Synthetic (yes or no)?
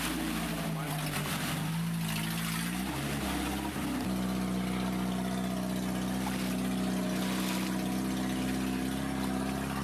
no